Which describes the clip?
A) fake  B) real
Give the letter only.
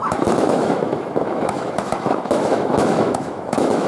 A